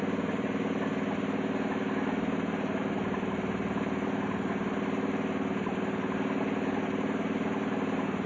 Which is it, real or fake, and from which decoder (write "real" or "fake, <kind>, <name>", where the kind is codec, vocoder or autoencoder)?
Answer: real